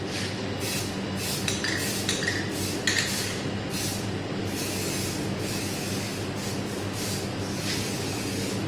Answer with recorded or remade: recorded